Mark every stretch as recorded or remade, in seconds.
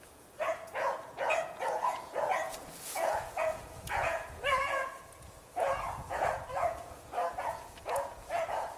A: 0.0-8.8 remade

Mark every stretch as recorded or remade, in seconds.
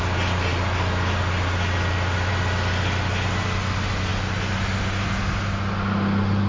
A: 0.0-6.5 recorded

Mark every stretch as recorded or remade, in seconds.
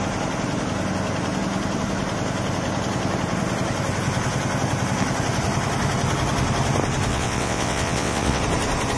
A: 0.0-7.1 recorded; 7.1-8.4 remade; 8.4-9.0 recorded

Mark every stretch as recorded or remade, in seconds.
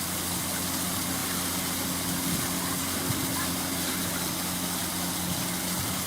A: 0.0-6.1 recorded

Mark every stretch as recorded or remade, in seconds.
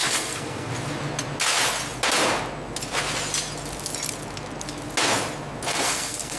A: 0.0-0.7 remade; 0.7-5.7 recorded; 5.7-6.4 remade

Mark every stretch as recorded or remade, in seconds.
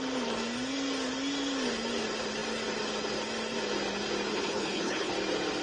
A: 0.0-4.3 recorded; 4.3-5.1 remade; 5.1-5.6 recorded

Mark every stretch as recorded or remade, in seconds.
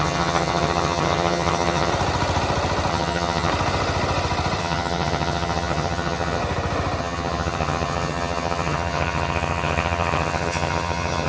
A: 0.0-1.9 remade; 1.9-2.9 recorded; 2.9-3.5 remade; 3.5-4.6 recorded; 4.6-6.4 remade; 6.4-7.0 recorded; 7.0-11.3 remade